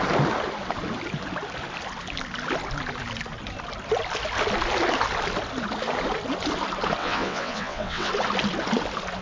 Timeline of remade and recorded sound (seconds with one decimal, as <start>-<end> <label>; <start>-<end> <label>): 0.0-7.0 recorded; 7.0-8.1 remade; 8.1-9.2 recorded